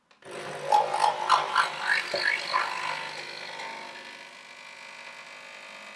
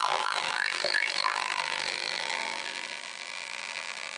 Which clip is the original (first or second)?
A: first